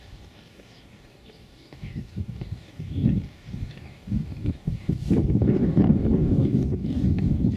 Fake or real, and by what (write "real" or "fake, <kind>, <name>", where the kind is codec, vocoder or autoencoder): fake, codec, DAC